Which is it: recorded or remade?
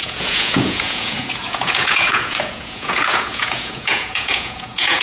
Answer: remade